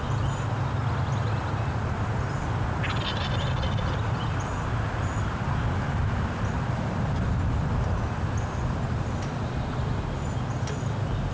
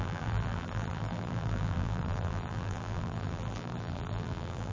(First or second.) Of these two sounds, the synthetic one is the second